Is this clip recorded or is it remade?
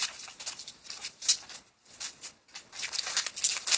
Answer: recorded